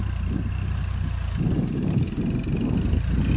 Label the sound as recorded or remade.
recorded